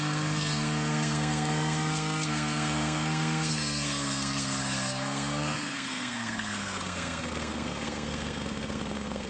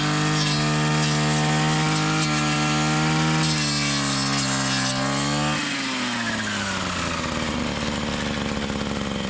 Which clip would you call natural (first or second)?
second